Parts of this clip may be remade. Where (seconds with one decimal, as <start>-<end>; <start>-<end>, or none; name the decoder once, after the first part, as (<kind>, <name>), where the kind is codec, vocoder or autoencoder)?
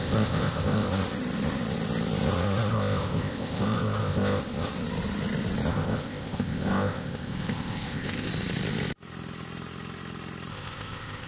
0.0-0.9 (codec, ZipCodec); 2.7-4.4; 5.7-8.3; 10.5-11.3